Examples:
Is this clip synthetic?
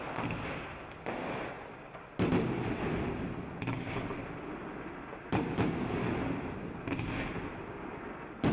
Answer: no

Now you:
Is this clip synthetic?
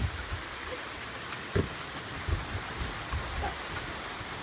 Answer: no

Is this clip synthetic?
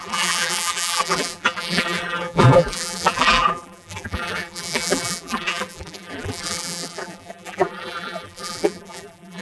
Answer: yes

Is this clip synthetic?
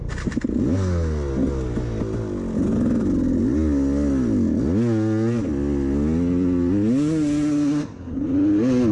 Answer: no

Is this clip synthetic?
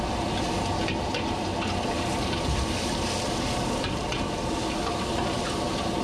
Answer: no